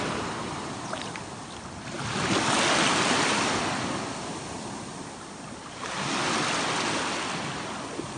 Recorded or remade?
recorded